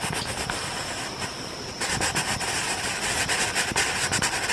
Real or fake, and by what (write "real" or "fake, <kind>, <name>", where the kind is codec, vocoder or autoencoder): real